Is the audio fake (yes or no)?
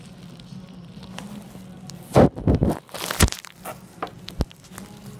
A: no